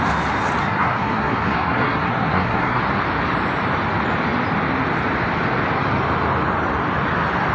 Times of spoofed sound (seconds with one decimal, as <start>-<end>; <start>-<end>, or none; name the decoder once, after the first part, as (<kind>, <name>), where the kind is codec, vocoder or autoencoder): 0.6-2.8 (codec, SNAC)